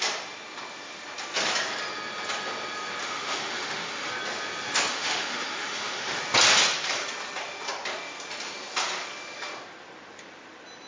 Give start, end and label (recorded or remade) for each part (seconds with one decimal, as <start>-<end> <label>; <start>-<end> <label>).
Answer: 0.0-3.0 recorded; 3.0-4.1 remade; 4.1-4.9 recorded; 4.9-6.2 remade; 6.2-10.9 recorded